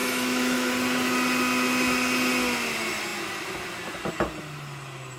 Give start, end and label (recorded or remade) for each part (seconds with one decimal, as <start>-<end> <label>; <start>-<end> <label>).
0.0-0.7 remade; 0.7-5.2 recorded